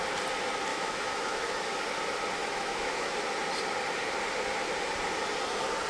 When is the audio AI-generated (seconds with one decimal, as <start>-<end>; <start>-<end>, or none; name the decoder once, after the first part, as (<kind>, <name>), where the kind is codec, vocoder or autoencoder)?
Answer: 0.7-1.5 (autoencoder, DAC-VAE); 2.4-3.1

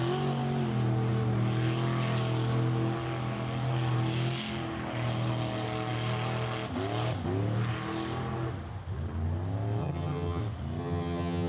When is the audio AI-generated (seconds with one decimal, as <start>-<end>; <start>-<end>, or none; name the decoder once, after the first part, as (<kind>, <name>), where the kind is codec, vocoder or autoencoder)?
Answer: 9.8-10.4 (vocoder, HiFi-GAN); 10.8-11.5

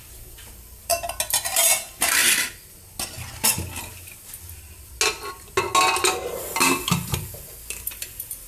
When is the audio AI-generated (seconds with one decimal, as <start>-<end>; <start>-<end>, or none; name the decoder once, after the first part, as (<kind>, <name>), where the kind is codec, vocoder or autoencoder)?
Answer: 0.0-0.9 (vocoder, BigVGAN v2); 1.4-2.2; 6.8-8.5

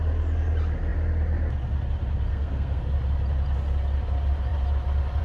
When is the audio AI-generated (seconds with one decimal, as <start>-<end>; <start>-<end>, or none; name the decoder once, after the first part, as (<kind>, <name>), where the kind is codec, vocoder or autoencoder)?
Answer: 2.3-2.8 (codec, SNAC)

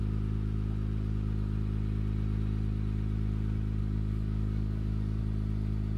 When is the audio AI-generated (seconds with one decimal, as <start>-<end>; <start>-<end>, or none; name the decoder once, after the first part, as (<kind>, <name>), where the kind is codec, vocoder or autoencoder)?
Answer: 3.8-5.2 (codec, DAC)

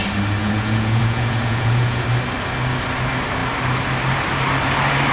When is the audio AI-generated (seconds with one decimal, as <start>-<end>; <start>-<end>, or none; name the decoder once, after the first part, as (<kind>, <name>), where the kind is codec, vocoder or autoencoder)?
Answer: 0.4-2.0 (vocoder, Vocos)